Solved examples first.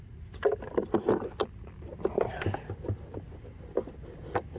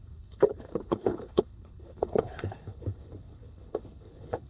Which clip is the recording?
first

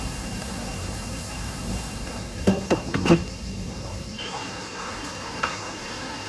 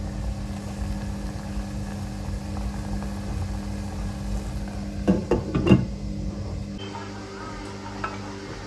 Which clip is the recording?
second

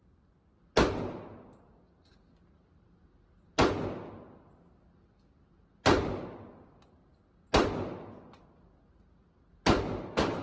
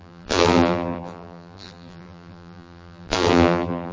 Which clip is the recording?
first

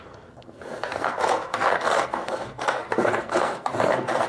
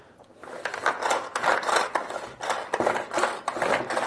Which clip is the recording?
second